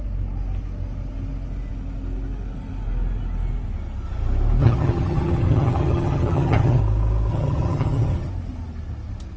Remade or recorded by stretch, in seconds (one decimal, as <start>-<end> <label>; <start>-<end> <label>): 0.0-4.6 recorded; 4.6-6.8 remade; 6.8-7.3 recorded; 7.3-8.3 remade; 8.3-9.4 recorded